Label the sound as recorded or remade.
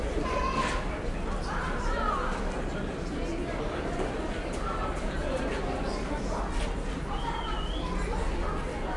recorded